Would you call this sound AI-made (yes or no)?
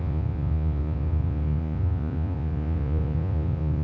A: yes